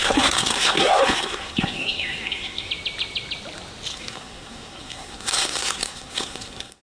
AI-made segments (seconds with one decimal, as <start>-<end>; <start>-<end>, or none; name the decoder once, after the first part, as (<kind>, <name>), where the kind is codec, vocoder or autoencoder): 0.0-2.7 (codec, SNAC); 3.9-6.8